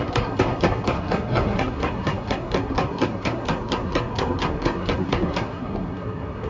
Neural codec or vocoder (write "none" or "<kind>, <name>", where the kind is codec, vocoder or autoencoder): codec, SNAC